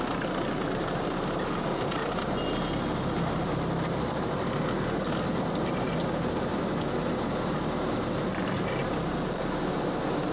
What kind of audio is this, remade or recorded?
recorded